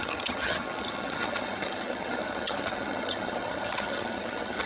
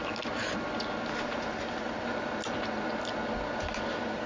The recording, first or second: second